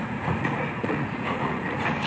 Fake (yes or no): yes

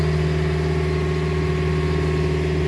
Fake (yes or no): no